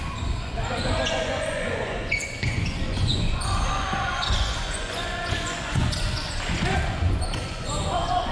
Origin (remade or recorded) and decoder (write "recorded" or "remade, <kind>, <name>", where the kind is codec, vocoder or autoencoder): remade, vocoder, Vocos